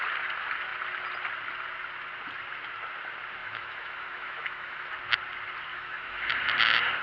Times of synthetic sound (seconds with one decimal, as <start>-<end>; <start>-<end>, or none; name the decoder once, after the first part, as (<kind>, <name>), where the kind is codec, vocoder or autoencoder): 3.4-4.9 (autoencoder, DAC-VAE); 5.7-6.3